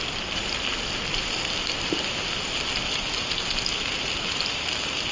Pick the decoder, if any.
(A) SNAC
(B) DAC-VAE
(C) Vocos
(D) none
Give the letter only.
D